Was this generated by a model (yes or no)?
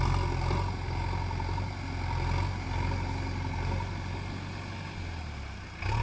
no